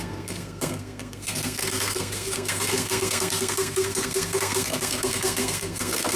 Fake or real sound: fake